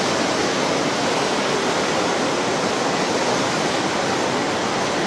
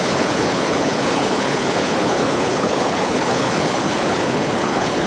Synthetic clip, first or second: second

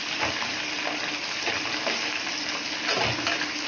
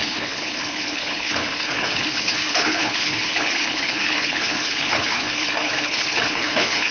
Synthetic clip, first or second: second